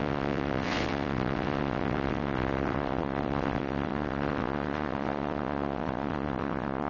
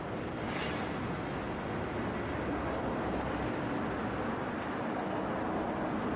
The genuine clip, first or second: second